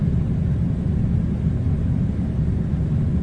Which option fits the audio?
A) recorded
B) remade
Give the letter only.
A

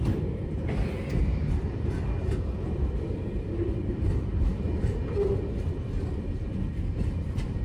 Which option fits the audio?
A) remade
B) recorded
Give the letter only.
A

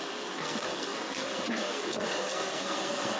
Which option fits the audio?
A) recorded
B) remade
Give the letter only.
B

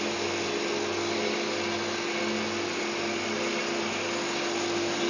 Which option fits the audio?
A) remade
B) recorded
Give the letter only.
B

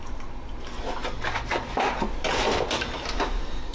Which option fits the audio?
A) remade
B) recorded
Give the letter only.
B